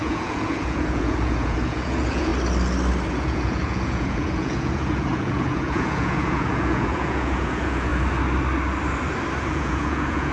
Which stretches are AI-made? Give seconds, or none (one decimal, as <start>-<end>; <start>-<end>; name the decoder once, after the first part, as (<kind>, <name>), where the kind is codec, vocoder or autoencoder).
0.0-2.3 (vocoder, Vocos); 3.1-7.9; 9.5-10.3